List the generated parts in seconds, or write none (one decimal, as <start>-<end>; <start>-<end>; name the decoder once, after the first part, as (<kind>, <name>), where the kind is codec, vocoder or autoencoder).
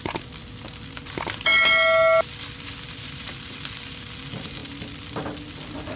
none